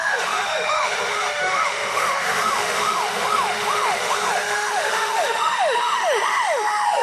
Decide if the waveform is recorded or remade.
remade